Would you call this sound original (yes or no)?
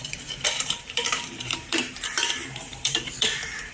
no